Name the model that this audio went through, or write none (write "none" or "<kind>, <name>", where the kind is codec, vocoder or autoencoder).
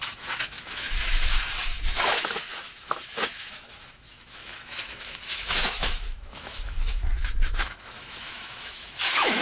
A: autoencoder, DAC-VAE